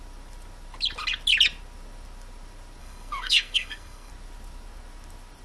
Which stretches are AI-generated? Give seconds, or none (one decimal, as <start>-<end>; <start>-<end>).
2.8-4.1